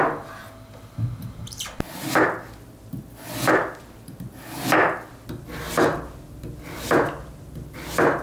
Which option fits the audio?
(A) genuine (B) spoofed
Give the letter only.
A